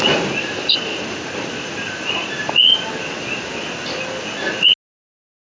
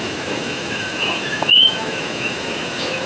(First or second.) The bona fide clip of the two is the first